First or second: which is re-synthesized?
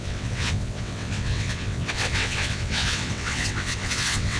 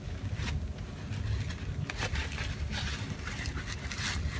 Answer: first